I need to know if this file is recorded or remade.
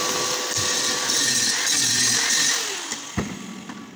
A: recorded